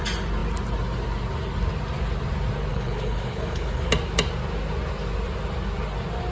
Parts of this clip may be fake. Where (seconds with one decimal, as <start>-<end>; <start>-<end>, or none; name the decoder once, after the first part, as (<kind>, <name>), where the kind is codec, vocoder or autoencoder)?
2.7-3.9 (codec, HILCodec)